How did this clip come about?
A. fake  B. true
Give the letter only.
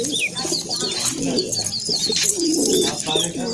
B